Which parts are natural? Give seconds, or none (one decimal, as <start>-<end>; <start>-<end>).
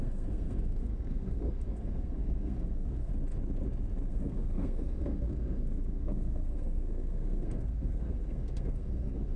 3.1-4.1